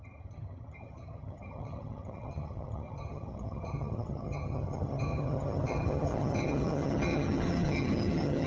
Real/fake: fake